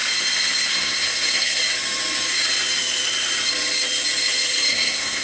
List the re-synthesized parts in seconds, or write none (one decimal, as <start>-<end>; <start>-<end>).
0.7-1.6; 4.7-5.2